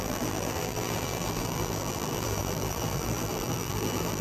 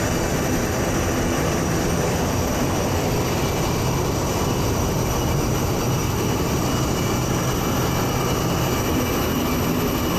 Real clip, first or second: second